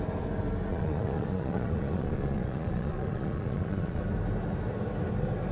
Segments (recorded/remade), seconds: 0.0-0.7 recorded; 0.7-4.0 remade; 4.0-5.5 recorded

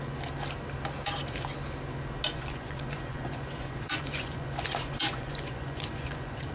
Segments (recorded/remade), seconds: 0.0-2.3 recorded; 2.3-6.5 remade

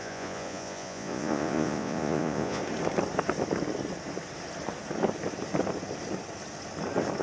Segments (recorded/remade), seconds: 0.0-2.6 remade; 2.6-7.2 recorded

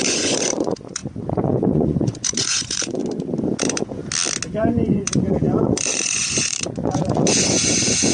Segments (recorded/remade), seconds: 0.0-3.0 remade; 3.0-3.6 recorded; 3.6-4.0 remade; 4.0-4.7 recorded; 4.7-8.1 remade